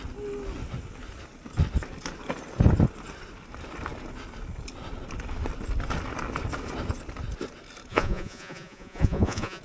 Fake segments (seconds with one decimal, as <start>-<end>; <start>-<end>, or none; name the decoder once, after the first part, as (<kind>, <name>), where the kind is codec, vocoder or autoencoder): 7.9-9.6 (vocoder, Vocos)